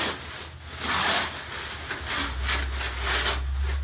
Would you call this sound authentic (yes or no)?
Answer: yes